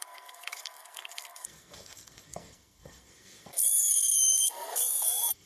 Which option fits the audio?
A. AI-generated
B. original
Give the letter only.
A